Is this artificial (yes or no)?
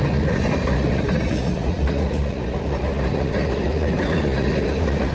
yes